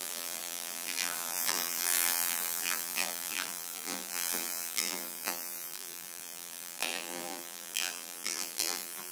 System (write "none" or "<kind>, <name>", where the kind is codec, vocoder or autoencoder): vocoder, BigVGAN v2